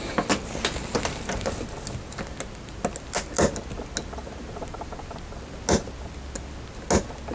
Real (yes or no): yes